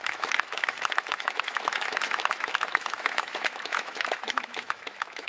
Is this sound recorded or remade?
remade